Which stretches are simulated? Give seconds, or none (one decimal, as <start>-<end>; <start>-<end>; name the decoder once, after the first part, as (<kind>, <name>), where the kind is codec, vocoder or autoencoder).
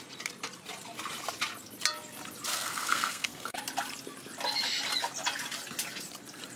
2.5-3.6 (codec, SNAC)